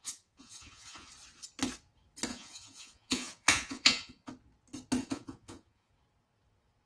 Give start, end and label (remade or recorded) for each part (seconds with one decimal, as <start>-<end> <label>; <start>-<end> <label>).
0.0-1.1 remade; 1.1-2.3 recorded; 2.3-4.3 remade; 4.3-5.0 recorded; 5.0-5.9 remade; 5.9-6.9 recorded